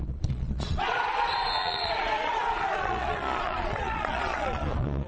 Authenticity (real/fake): fake